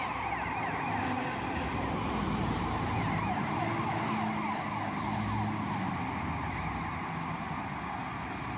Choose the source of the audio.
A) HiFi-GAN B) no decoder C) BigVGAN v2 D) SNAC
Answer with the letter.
B